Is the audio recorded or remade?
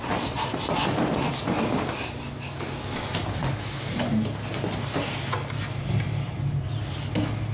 recorded